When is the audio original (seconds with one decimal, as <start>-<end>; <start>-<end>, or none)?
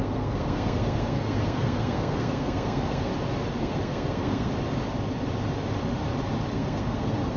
3.1-3.6; 4.5-6.5